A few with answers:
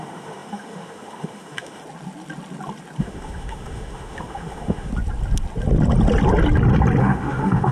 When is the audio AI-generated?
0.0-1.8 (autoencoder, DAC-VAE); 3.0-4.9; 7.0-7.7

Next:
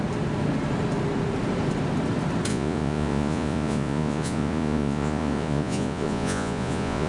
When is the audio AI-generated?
2.5-7.1 (vocoder, Vocos)

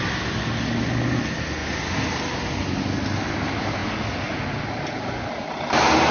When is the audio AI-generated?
none

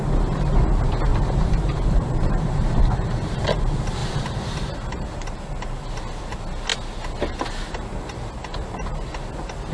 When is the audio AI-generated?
1.1-2.8 (vocoder, BigVGAN v2); 4.0-4.5

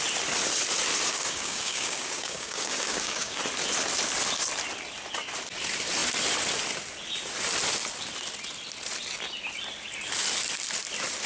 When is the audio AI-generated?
1.1-3.4 (codec, DAC)